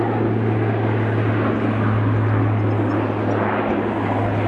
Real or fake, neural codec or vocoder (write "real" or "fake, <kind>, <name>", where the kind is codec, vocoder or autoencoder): real